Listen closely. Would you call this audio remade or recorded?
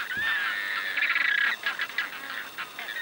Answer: recorded